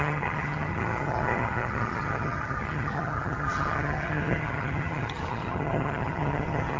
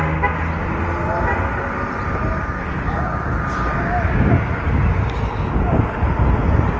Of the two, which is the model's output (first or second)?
first